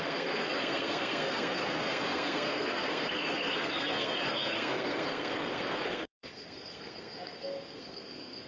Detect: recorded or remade remade